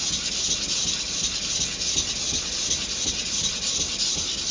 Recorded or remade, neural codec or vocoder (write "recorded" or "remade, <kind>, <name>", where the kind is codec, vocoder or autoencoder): recorded